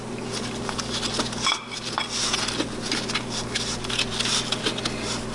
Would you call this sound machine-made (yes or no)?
no